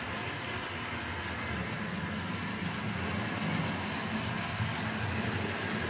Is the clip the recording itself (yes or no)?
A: yes